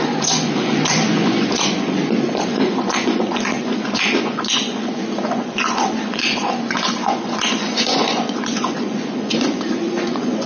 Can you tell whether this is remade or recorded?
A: remade